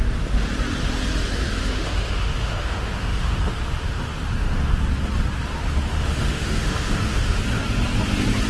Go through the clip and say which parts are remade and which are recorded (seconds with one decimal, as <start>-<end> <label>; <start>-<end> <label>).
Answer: 0.0-1.6 recorded; 1.6-4.8 remade; 4.8-5.9 recorded; 5.9-7.4 remade; 7.4-8.5 recorded